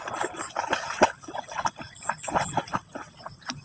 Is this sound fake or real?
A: real